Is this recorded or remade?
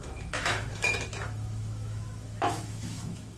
remade